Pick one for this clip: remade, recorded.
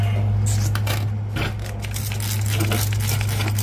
recorded